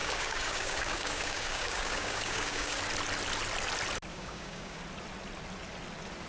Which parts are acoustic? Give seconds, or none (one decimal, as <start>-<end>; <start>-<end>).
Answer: 2.8-4.1; 4.8-6.3